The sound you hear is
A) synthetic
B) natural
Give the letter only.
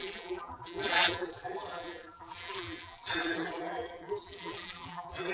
A